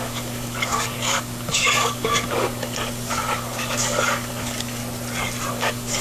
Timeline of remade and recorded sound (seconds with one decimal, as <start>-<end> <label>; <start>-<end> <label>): 0.0-4.8 remade; 4.8-5.5 recorded; 5.5-6.0 remade